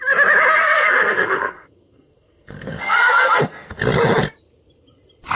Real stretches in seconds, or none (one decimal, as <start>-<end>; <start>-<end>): 0.0-0.6; 3.8-5.4